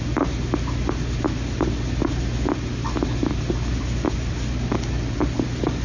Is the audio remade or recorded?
recorded